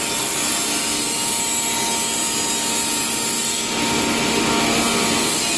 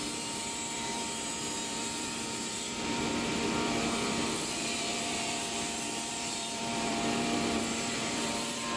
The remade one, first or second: second